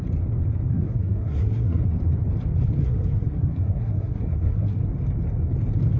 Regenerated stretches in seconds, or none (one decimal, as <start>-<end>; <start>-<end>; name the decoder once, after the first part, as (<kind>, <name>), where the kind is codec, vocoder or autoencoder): 0.7-1.8 (codec, SNAC); 2.8-4.8